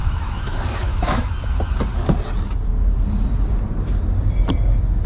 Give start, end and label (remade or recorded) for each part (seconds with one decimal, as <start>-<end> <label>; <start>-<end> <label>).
0.0-1.3 remade; 1.3-5.1 recorded